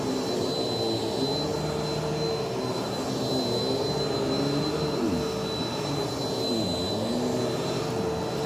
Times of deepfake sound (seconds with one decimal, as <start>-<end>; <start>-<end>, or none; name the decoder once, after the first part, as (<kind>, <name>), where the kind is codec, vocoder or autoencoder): none